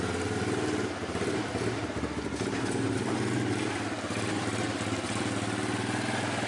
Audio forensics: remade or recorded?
recorded